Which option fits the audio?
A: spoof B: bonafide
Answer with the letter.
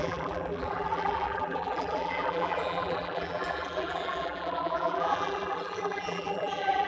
A